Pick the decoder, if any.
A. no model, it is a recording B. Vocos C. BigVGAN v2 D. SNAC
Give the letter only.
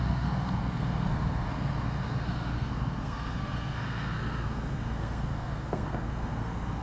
D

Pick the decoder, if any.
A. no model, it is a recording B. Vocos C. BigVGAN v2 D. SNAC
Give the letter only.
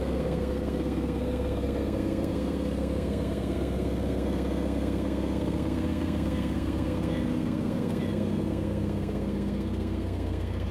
D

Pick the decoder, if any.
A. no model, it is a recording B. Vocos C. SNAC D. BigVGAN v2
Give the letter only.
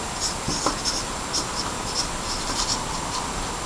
A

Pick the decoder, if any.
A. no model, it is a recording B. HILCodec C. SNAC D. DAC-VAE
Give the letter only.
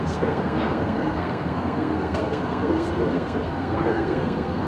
C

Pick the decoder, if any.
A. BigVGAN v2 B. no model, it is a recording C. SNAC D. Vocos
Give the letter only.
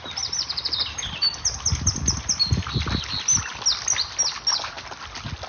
B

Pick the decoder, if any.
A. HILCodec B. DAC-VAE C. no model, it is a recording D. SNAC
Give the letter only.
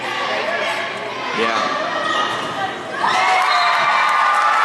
C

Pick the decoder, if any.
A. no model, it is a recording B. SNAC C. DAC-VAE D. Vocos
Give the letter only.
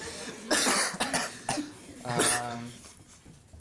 A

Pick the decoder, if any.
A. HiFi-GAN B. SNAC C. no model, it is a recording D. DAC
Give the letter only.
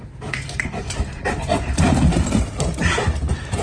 C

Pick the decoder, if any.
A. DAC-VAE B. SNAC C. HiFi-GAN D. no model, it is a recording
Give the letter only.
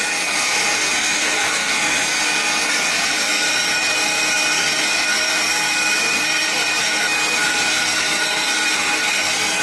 B